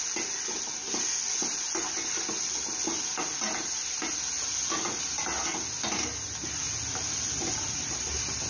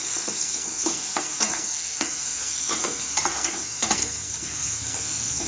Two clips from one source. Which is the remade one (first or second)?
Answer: second